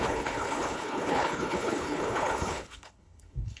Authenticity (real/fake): fake